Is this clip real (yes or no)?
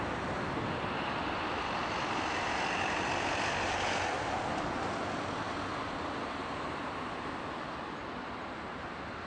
yes